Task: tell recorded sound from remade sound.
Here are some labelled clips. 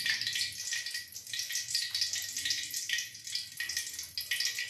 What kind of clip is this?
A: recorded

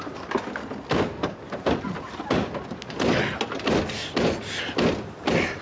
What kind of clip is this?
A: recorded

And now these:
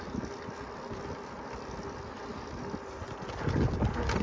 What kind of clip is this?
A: recorded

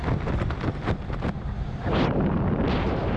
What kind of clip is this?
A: recorded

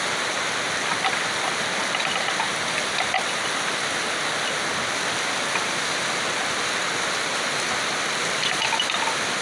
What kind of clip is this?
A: recorded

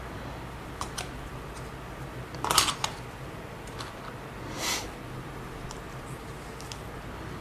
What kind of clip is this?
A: recorded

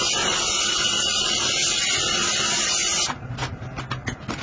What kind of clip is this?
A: recorded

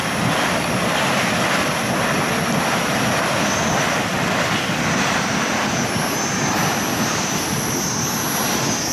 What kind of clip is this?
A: recorded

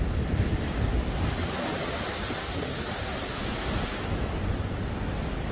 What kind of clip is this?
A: recorded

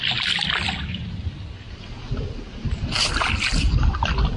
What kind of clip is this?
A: recorded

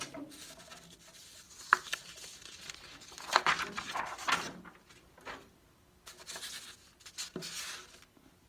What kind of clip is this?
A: recorded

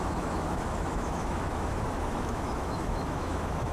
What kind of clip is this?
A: remade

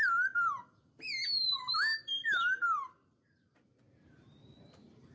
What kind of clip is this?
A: recorded